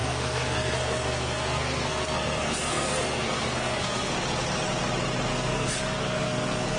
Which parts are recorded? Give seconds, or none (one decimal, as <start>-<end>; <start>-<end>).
4.1-5.3